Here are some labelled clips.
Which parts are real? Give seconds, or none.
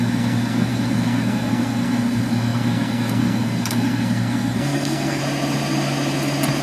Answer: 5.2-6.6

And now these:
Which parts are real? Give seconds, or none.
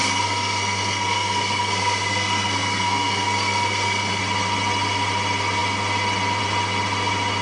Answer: 4.2-7.4